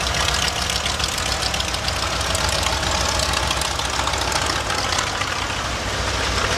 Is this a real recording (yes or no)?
yes